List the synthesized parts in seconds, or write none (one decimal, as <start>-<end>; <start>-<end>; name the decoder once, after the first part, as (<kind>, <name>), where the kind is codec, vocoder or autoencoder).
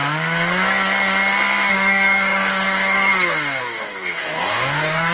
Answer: 1.7-3.1 (codec, DAC); 3.6-5.1